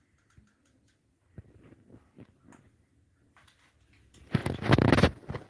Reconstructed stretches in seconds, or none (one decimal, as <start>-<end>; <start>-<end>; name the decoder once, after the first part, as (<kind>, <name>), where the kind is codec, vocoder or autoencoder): none